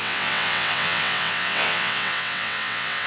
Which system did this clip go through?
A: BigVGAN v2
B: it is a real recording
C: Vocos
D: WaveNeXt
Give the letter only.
D